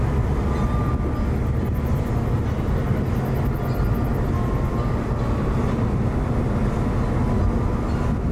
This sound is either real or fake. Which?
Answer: real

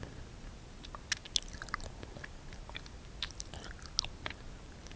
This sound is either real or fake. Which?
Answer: real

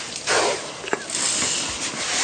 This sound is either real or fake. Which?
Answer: real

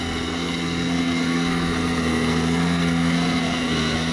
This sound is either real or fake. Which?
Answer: fake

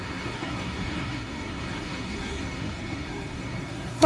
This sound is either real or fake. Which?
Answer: fake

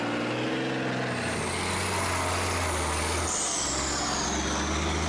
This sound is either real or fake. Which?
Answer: real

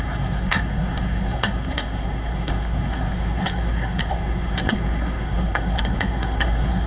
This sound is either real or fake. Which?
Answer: fake